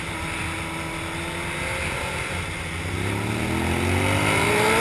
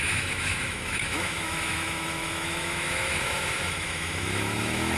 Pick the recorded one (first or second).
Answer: first